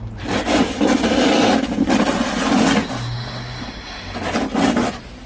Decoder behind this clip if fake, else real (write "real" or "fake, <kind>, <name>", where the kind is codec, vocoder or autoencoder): real